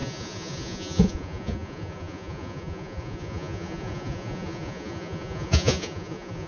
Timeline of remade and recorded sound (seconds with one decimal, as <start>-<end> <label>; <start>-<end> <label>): 0.0-6.5 remade